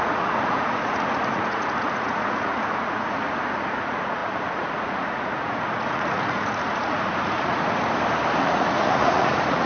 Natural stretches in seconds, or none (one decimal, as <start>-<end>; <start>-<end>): 7.8-8.4